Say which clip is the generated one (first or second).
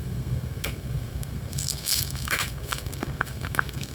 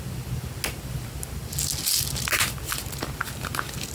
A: first